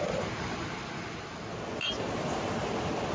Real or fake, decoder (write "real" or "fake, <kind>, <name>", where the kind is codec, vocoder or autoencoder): real